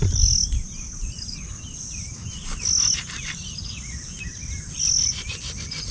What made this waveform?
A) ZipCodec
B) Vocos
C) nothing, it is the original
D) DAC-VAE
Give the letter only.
C